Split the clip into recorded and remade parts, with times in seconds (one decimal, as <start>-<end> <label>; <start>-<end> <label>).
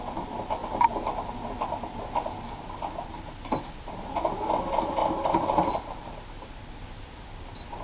0.0-7.8 recorded